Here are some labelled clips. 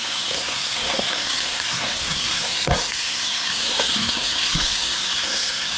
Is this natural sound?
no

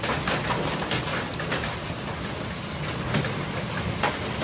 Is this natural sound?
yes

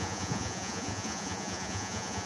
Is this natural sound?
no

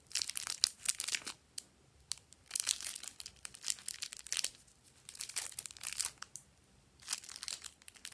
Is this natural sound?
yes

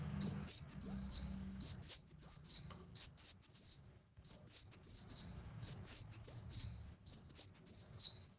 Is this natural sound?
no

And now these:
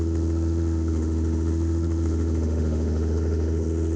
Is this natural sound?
no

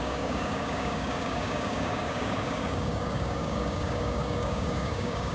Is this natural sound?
no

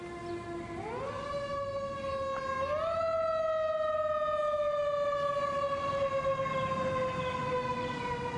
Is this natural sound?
yes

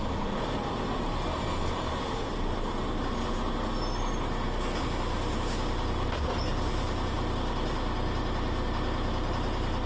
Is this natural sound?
yes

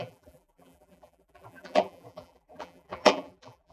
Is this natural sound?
no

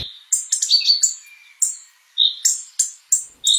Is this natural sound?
yes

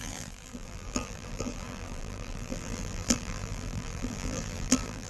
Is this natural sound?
no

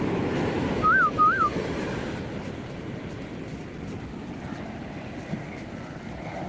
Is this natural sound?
no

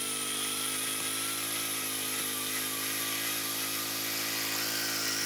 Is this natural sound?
yes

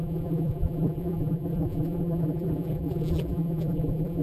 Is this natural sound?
no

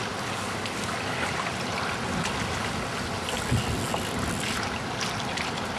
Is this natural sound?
yes